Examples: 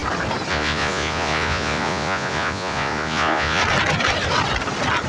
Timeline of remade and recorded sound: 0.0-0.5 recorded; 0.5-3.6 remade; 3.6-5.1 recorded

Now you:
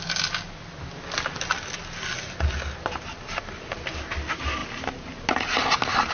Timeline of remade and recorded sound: 0.0-6.1 recorded